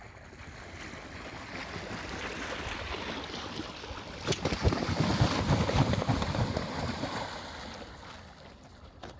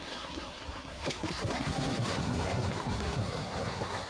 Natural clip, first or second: first